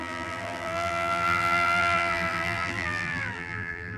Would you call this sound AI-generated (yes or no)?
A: yes